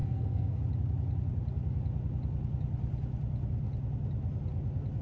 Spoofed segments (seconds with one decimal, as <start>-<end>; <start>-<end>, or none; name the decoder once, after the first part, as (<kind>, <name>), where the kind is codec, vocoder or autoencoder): 0.0-0.6 (codec, SNAC)